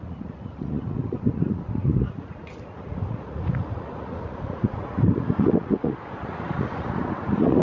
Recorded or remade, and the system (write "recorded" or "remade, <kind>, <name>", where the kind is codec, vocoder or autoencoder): remade, vocoder, Vocos